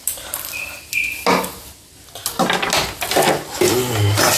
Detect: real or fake real